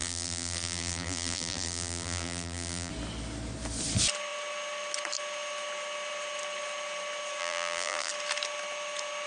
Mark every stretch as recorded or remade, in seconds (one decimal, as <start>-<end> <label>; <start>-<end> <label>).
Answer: 0.0-2.9 remade; 2.9-7.4 recorded; 7.4-8.1 remade; 8.1-9.3 recorded

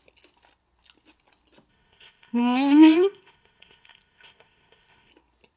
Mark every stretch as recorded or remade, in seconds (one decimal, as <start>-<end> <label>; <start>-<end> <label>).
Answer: 0.0-1.7 recorded; 1.7-5.1 remade; 5.1-5.6 recorded

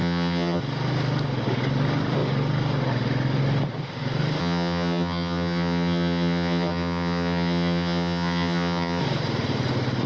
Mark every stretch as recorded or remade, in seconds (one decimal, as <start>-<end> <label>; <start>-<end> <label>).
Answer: 0.0-0.6 remade; 0.6-4.4 recorded; 4.4-9.0 remade; 9.0-10.1 recorded

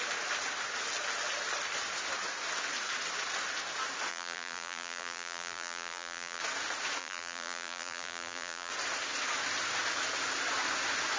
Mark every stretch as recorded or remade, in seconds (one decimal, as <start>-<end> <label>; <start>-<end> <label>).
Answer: 0.0-4.1 recorded; 4.1-6.4 remade; 6.4-7.0 recorded; 7.0-8.7 remade; 8.7-11.2 recorded

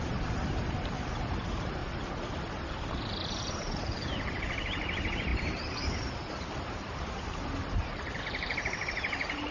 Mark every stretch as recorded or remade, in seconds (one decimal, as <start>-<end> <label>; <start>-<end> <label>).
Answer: 0.0-1.8 remade; 1.8-2.4 recorded; 2.4-9.5 remade